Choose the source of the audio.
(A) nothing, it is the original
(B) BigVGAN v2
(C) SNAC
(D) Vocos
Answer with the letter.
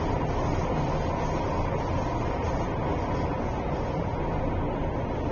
A